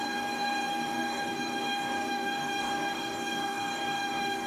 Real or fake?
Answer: fake